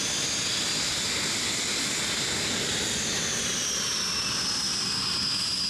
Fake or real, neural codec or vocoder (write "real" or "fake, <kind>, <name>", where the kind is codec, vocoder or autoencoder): real